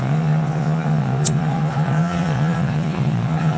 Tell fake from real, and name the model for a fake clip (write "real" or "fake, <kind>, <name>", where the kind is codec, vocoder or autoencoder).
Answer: fake, vocoder, Vocos